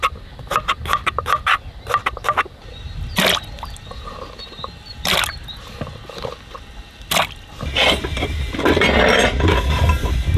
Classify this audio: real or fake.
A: real